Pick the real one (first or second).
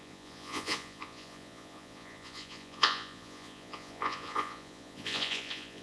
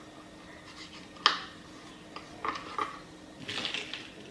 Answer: second